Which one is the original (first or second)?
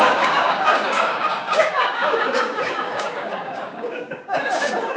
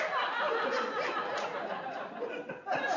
second